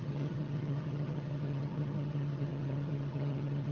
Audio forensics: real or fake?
fake